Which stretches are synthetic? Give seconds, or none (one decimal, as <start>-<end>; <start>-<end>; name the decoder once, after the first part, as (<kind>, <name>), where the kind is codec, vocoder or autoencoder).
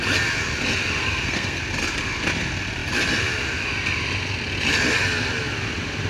1.0-1.6 (codec, SNAC)